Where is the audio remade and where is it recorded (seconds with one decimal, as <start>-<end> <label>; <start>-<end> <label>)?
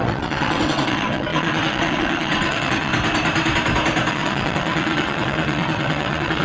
0.0-2.9 remade; 2.9-4.1 recorded; 4.1-6.4 remade